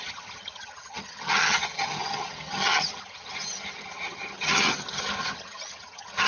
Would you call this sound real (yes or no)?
no